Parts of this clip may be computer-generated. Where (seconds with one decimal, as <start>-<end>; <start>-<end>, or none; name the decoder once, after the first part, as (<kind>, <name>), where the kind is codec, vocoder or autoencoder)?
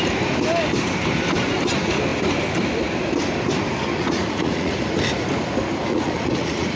3.9-4.8 (vocoder, Vocos); 5.9-6.8